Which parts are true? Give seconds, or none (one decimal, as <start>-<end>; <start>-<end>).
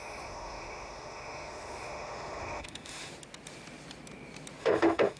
3.1-4.6